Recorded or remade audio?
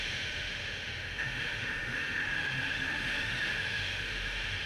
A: remade